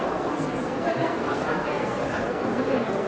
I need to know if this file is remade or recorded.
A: remade